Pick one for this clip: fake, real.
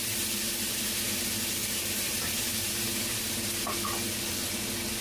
real